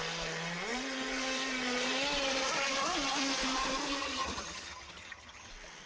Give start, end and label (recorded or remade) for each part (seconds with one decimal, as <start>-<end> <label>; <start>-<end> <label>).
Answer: 0.0-4.0 recorded; 4.0-5.5 remade; 5.5-5.9 recorded